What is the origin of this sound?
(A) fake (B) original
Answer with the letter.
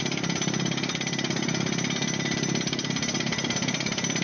B